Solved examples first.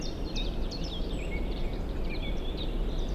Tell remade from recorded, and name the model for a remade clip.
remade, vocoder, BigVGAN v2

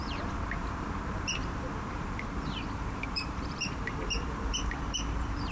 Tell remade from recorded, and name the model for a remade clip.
remade, vocoder, BigVGAN v2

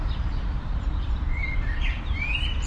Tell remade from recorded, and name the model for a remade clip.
remade, vocoder, BigVGAN v2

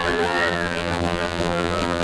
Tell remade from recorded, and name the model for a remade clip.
remade, vocoder, BigVGAN v2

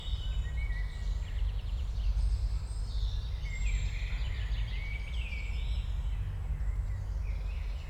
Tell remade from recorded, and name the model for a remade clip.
recorded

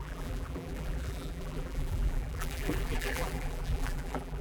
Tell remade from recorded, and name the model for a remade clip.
remade, vocoder, BigVGAN v2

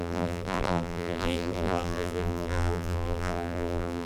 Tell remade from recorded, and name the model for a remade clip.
remade, vocoder, BigVGAN v2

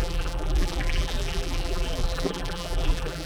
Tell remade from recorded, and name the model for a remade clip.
remade, vocoder, BigVGAN v2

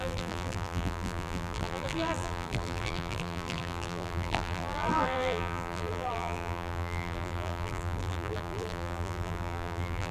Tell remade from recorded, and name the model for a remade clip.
remade, vocoder, BigVGAN v2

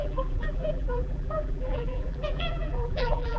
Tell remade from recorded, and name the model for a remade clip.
remade, vocoder, BigVGAN v2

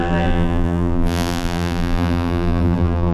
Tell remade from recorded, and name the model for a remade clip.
remade, vocoder, BigVGAN v2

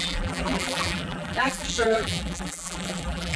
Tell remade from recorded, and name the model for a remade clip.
remade, vocoder, BigVGAN v2